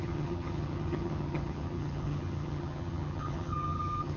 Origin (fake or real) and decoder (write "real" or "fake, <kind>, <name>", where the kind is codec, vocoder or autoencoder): fake, vocoder, HiFi-GAN